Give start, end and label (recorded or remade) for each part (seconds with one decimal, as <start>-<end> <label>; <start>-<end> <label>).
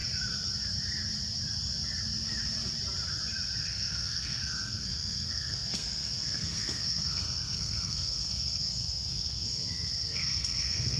0.0-3.6 recorded; 3.6-11.0 remade